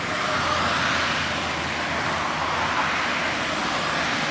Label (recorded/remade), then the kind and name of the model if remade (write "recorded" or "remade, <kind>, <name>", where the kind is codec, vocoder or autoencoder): recorded